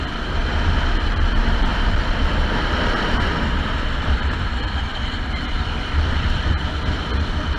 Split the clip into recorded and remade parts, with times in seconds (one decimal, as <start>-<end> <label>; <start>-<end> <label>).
0.0-0.4 remade; 0.4-1.1 recorded; 1.1-7.6 remade